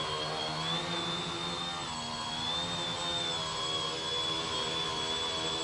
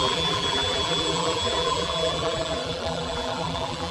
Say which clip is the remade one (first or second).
second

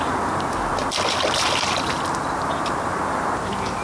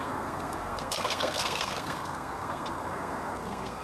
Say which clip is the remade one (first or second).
second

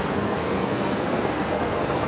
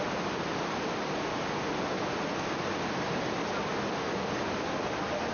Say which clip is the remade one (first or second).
first